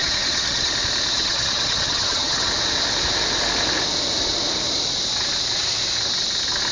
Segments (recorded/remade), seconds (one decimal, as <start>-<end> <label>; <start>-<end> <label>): 0.0-0.7 remade; 0.7-1.1 recorded; 1.1-2.5 remade; 2.5-6.7 recorded